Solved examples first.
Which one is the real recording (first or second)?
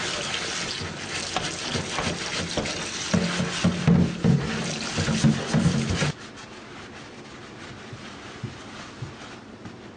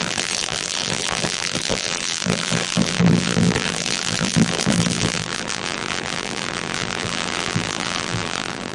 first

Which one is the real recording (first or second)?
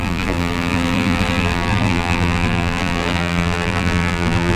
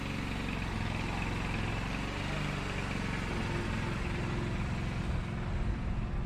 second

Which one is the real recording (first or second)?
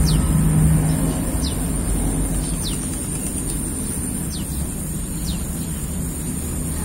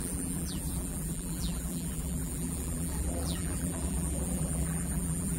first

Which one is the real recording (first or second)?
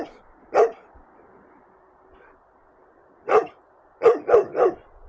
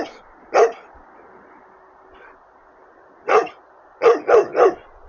second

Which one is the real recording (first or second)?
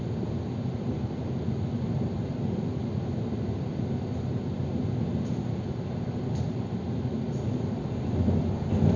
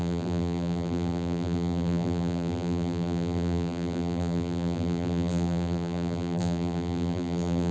first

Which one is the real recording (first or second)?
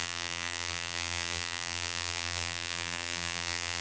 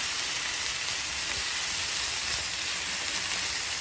second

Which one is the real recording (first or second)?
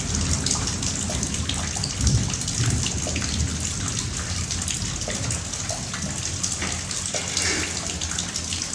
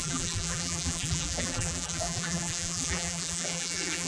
first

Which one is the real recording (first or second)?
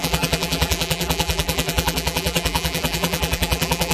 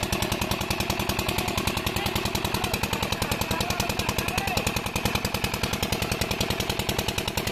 second